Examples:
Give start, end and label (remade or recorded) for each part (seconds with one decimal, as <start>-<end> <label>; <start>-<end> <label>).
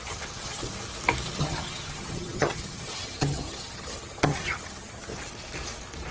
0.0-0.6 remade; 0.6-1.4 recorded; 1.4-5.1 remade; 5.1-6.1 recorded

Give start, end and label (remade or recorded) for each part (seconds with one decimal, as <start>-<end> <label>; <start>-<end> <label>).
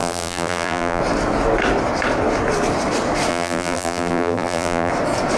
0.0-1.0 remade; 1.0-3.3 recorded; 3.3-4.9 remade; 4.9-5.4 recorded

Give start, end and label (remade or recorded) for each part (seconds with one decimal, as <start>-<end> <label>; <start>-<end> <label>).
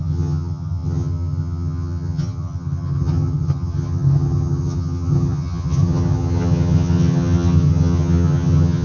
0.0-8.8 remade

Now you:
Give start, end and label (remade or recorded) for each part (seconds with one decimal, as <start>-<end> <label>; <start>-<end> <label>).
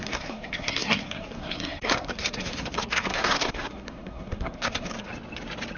0.0-5.1 remade; 5.1-5.8 recorded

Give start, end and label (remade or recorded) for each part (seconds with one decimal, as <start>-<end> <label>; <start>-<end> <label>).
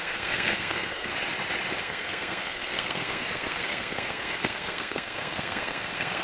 0.0-1.1 remade; 1.1-1.8 recorded; 1.8-6.2 remade